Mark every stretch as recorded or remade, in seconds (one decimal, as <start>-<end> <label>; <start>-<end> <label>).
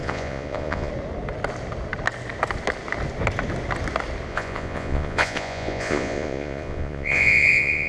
0.0-0.9 remade; 0.9-4.3 recorded; 4.3-7.9 remade